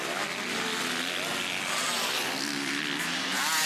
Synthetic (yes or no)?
no